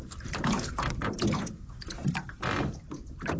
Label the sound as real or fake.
real